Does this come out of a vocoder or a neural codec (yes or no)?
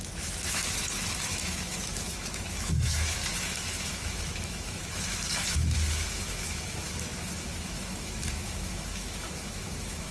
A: yes